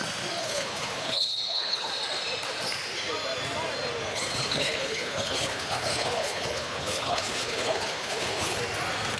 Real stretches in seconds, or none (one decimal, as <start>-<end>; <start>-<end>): 0.0-0.4; 1.9-4.1; 8.6-9.2